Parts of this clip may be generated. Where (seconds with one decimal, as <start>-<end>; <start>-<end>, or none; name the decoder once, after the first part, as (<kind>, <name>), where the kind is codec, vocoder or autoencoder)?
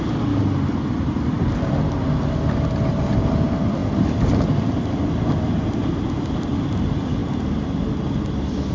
none